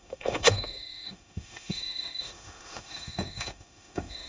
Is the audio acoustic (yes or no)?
no